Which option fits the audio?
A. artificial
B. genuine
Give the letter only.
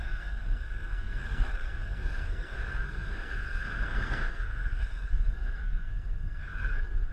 A